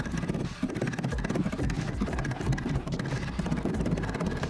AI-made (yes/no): no